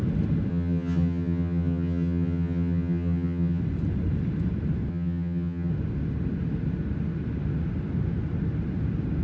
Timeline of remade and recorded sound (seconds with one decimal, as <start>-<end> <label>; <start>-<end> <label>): 0.0-0.5 recorded; 0.5-3.6 remade; 3.6-4.9 recorded; 4.9-5.7 remade; 5.7-9.2 recorded